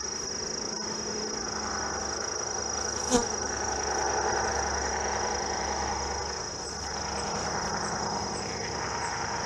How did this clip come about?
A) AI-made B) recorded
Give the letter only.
B